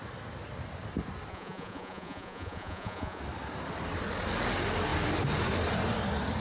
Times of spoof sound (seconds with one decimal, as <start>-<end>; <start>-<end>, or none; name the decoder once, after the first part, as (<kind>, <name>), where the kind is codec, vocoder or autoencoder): 1.3-3.2 (vocoder, Vocos)